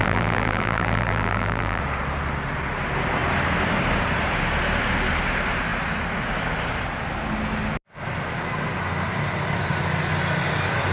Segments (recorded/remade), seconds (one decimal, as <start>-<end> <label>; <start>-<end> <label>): 0.0-1.8 remade; 1.8-10.9 recorded